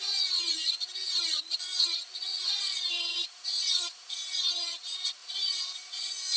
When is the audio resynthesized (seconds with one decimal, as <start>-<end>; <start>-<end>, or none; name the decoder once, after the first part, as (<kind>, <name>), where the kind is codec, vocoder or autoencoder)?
0.0-6.4 (vocoder, Vocos)